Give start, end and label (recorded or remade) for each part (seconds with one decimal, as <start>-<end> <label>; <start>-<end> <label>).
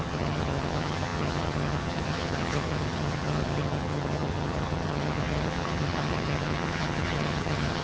0.0-7.8 remade